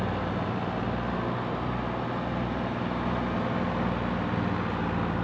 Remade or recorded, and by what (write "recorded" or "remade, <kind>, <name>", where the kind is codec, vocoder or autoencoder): recorded